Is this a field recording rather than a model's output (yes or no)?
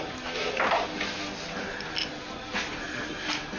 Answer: yes